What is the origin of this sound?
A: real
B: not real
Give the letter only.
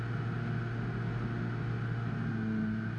A